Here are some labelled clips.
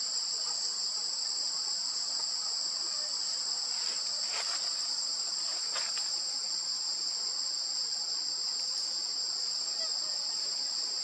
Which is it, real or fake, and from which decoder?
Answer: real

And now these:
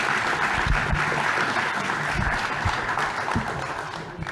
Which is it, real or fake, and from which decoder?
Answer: real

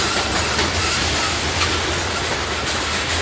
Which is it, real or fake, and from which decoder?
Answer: real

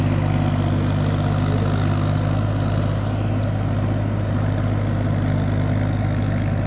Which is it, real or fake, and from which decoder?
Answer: real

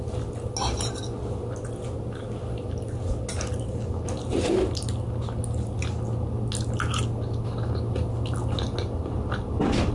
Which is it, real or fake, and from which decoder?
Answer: real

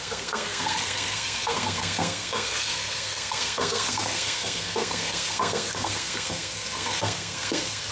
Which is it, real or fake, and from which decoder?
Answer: fake, codec, SNAC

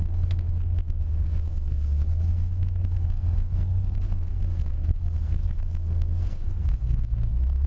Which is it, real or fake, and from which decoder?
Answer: fake, codec, SNAC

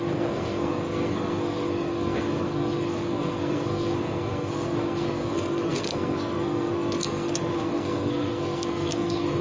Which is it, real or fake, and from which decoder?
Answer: fake, codec, SNAC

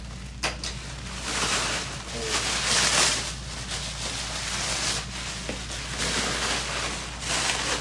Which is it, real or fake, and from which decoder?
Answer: real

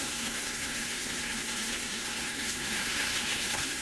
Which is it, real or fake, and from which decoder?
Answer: fake, codec, SNAC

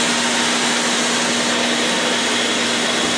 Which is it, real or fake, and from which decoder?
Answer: real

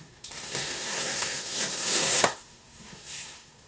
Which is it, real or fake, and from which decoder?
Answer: fake, codec, SNAC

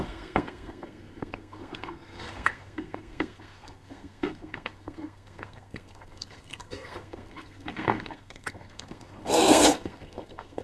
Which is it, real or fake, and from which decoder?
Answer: fake, codec, SNAC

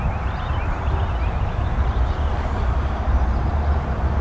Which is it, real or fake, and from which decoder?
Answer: real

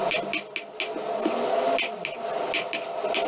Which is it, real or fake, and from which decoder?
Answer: real